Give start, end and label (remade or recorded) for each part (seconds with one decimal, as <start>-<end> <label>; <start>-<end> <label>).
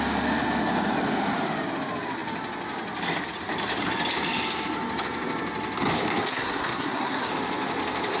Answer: 0.0-6.3 recorded; 6.3-7.3 remade; 7.3-8.2 recorded